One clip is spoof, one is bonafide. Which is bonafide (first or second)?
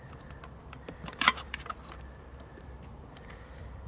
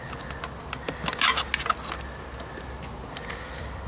second